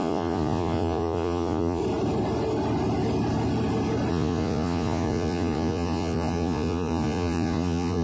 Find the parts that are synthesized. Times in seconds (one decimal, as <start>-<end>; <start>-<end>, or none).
0.0-1.8; 4.1-8.0

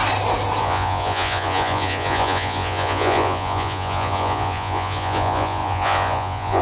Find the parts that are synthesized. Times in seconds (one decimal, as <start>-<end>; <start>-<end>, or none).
0.6-6.6